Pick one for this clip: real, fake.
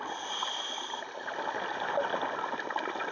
real